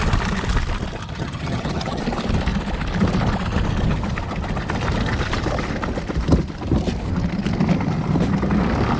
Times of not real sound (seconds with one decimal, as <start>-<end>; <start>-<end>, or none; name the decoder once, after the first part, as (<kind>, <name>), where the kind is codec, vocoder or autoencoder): 1.0-2.0 (vocoder, HiFi-GAN)